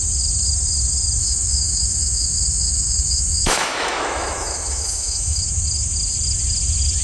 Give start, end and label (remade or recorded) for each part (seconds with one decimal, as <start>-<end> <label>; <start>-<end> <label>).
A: 0.0-1.2 recorded; 1.2-5.4 remade; 5.4-7.0 recorded